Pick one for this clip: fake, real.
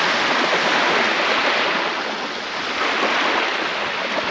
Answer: real